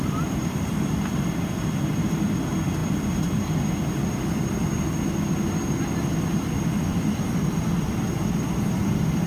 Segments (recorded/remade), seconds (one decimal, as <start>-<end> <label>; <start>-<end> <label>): 0.0-2.8 remade; 2.8-6.9 recorded; 6.9-9.3 remade